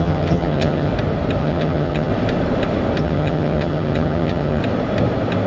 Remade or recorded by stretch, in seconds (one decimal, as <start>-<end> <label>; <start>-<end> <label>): 0.0-0.9 remade; 0.9-1.4 recorded; 1.4-2.1 remade; 2.1-3.0 recorded; 3.0-4.6 remade; 4.6-5.5 recorded